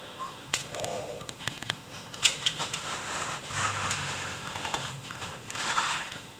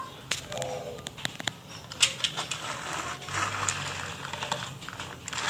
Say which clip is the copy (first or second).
first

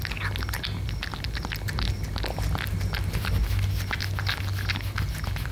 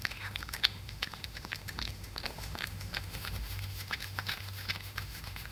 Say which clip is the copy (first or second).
second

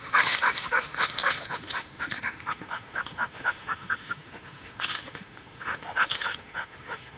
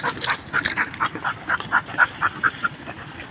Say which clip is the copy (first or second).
first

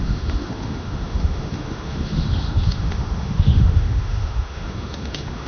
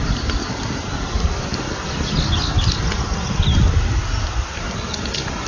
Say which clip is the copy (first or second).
first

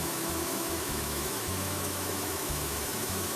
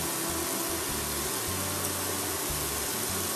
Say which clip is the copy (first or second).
first